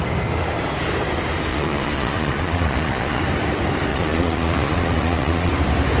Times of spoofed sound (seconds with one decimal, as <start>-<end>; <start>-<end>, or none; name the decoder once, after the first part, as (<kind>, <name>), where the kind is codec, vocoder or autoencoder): 1.5-3.2 (vocoder, Vocos); 3.9-5.5